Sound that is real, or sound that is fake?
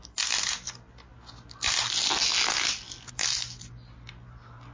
real